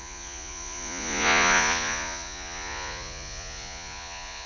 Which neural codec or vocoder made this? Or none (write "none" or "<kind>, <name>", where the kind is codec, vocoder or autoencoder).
vocoder, Vocos